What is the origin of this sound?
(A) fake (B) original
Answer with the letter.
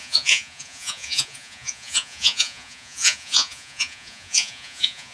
A